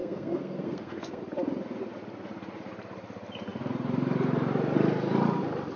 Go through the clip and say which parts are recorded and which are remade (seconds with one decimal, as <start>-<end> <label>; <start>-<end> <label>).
0.0-1.2 remade; 1.2-5.8 recorded